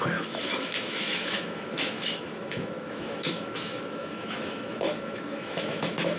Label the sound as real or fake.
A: fake